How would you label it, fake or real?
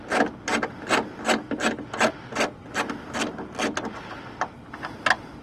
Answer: real